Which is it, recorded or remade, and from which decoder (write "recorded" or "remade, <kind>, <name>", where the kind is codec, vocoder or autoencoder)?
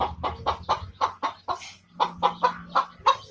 recorded